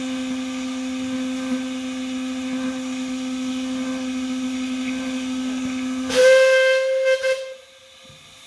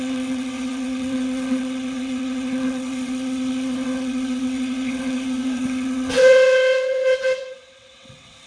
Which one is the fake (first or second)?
second